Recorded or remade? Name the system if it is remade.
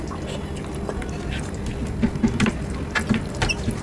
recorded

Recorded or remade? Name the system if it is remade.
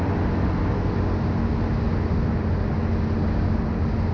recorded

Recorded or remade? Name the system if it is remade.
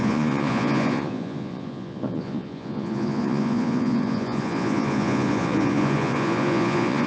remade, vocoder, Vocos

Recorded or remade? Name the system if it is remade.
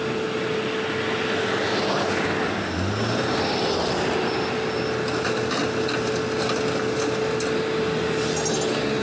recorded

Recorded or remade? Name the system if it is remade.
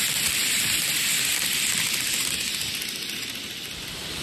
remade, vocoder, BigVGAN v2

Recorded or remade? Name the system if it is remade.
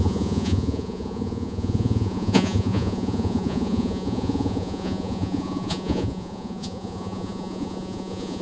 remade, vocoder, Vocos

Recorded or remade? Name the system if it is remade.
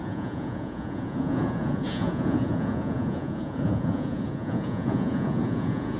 remade, vocoder, Vocos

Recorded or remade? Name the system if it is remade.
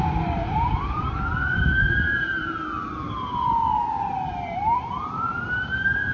remade, vocoder, BigVGAN v2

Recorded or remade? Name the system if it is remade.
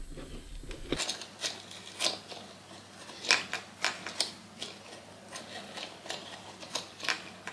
recorded